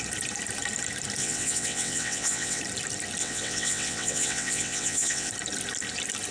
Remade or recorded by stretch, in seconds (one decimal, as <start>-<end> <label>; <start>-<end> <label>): 0.0-1.2 recorded; 1.2-2.6 remade; 2.6-3.2 recorded; 3.2-5.3 remade; 5.3-6.3 recorded